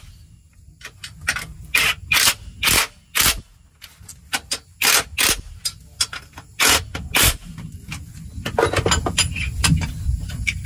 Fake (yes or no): no